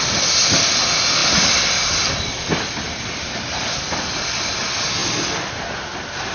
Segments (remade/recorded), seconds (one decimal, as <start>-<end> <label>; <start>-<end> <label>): 0.0-1.2 recorded; 1.2-4.6 remade; 4.6-5.0 recorded; 5.0-5.6 remade; 5.6-6.3 recorded

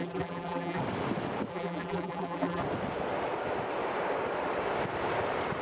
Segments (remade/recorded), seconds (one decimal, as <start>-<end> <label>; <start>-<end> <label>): 0.0-0.8 remade; 0.8-1.5 recorded; 1.5-2.6 remade; 2.6-5.6 recorded

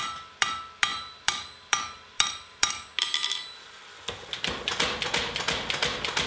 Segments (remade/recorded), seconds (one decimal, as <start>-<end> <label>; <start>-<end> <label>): 0.0-2.9 remade; 2.9-6.3 recorded

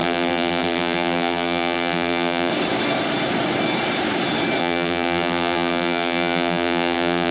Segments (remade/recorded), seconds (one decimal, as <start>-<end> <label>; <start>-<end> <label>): 0.0-2.5 remade; 2.5-4.6 recorded; 4.6-7.3 remade

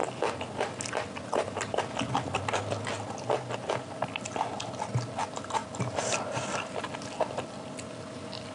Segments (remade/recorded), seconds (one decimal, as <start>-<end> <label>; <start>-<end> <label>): 0.0-8.5 recorded

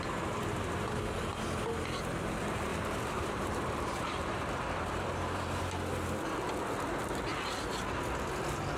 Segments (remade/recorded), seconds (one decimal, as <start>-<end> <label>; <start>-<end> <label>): 0.0-2.7 recorded; 2.7-5.6 remade; 5.6-8.8 recorded